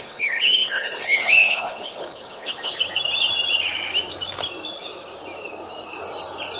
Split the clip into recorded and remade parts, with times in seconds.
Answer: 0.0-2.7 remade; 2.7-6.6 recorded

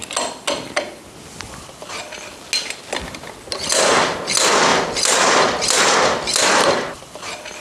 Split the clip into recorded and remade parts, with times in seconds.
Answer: 0.0-7.6 recorded

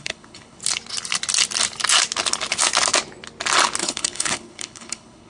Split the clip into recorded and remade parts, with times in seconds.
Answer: 0.0-0.6 remade; 0.6-3.8 recorded; 3.8-5.3 remade

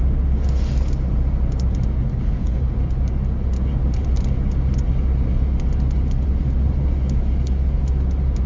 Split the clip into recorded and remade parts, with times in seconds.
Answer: 0.0-2.1 recorded; 2.1-2.7 remade; 2.7-8.5 recorded